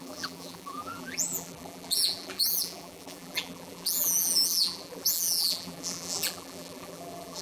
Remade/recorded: remade